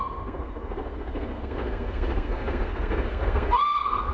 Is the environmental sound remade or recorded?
remade